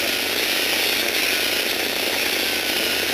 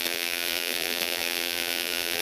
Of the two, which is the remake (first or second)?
second